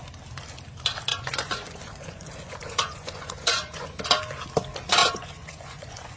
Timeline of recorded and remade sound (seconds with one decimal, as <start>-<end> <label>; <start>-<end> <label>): 0.0-1.1 recorded; 1.1-3.9 remade; 3.9-5.0 recorded; 5.0-6.2 remade